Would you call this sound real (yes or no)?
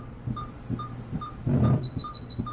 yes